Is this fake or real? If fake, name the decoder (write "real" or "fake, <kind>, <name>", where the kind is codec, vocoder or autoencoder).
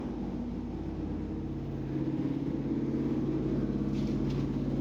real